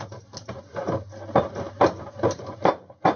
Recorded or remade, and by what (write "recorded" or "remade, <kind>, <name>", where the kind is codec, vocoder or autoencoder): recorded